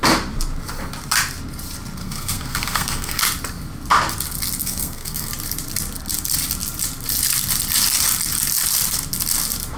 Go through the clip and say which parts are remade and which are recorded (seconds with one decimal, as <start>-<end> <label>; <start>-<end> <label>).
0.0-2.0 recorded; 2.0-3.2 remade; 3.2-4.6 recorded; 4.6-5.3 remade; 5.3-9.8 recorded